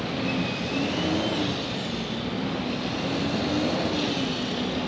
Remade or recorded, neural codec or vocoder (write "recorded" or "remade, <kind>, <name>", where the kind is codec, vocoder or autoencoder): recorded